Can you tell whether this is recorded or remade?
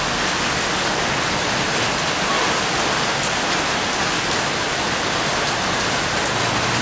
recorded